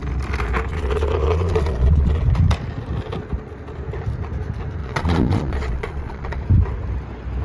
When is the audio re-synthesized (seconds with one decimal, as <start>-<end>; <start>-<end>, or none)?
0.7-2.2; 4.8-6.4

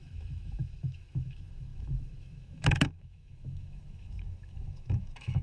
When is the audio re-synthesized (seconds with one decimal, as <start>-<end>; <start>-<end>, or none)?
0.0-5.4

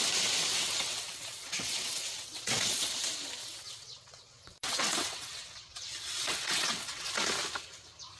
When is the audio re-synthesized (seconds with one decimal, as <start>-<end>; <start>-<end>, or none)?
0.5-2.9; 3.4-7.1

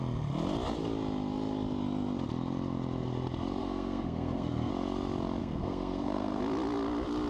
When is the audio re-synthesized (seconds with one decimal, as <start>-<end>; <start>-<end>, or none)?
3.6-4.7; 5.4-6.4

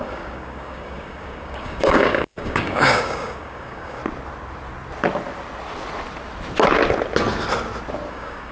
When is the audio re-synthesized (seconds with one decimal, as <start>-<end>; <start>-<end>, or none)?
0.0-4.0; 8.1-8.5